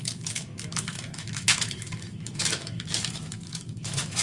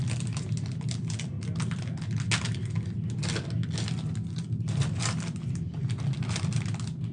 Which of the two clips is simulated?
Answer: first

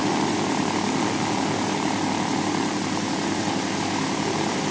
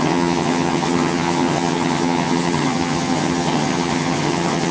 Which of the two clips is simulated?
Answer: second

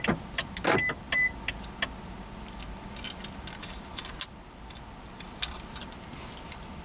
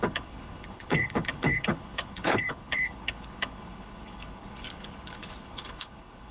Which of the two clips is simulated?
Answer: second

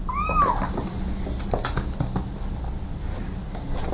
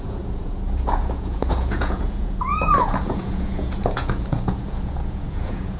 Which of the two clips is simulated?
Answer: second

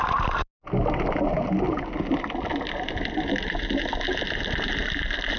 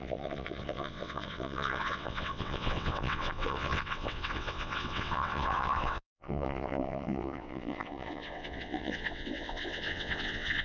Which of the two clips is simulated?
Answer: second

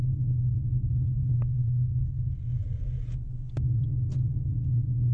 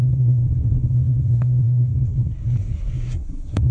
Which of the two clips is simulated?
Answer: second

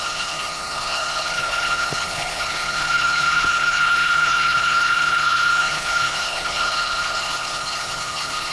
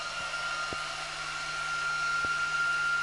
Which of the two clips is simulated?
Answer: first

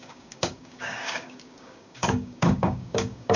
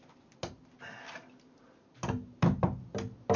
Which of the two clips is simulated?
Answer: first